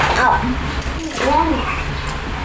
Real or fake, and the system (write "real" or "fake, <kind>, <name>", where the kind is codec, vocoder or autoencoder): real